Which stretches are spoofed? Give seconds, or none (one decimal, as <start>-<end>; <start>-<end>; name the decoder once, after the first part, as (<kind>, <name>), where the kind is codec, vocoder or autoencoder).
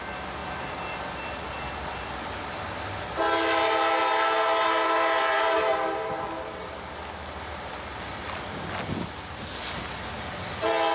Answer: none